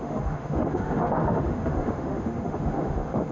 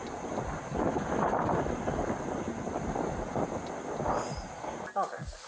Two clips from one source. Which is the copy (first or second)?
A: first